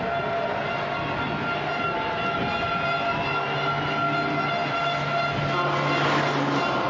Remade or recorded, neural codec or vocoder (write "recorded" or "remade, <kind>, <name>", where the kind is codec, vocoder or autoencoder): recorded